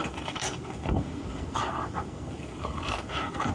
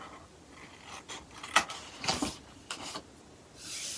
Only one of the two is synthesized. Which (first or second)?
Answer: first